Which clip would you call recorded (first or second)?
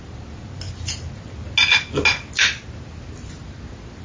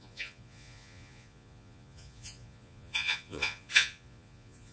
first